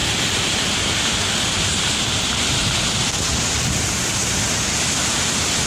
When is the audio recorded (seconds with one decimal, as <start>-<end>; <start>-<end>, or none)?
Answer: 0.0-5.7